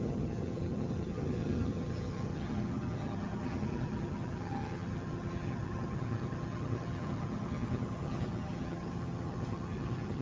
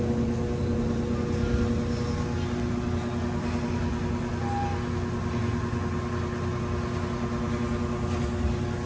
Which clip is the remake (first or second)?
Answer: first